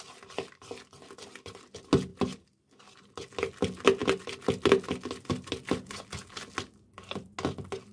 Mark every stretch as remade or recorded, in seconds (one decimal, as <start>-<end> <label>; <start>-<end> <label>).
0.0-2.1 recorded; 2.1-3.3 remade; 3.3-7.9 recorded